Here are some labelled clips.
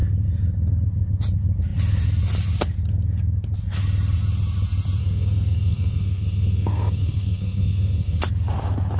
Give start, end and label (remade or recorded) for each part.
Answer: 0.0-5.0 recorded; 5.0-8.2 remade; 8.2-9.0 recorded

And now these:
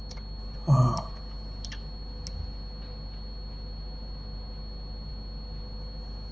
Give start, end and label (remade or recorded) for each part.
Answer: 0.0-6.3 recorded

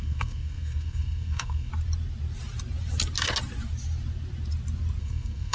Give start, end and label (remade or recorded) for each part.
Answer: 0.0-1.7 remade; 1.7-5.0 recorded; 5.0-5.5 remade

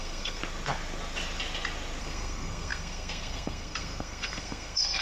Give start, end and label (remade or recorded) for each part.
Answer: 0.0-0.4 remade; 0.4-2.0 recorded; 2.0-5.0 remade

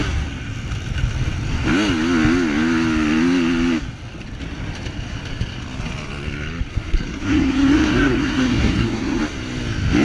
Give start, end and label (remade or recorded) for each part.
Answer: 0.0-6.7 recorded; 6.7-9.2 remade; 9.2-10.0 recorded

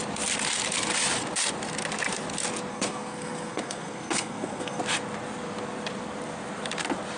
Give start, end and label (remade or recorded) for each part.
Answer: 0.0-2.7 recorded; 2.7-4.8 remade; 4.8-7.2 recorded